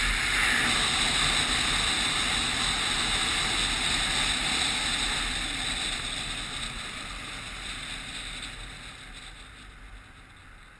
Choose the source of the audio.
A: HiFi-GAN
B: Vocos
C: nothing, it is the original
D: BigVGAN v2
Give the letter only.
C